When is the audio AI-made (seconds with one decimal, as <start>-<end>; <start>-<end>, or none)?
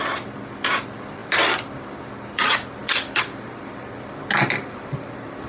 none